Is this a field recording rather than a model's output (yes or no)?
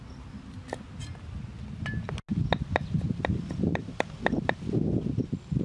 yes